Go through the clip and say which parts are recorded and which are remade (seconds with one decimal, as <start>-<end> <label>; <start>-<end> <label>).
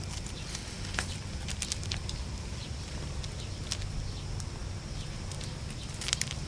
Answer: 0.0-0.5 recorded; 0.5-1.1 remade; 1.1-6.5 recorded